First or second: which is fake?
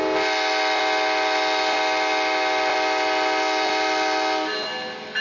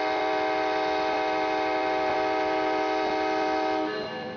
second